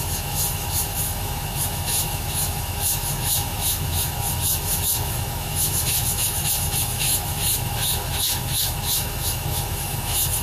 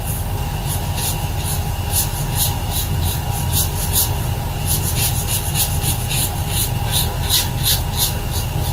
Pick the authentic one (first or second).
second